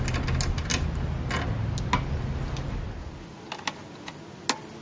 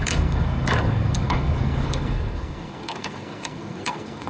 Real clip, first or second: first